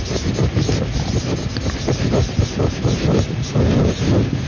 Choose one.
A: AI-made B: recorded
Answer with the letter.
B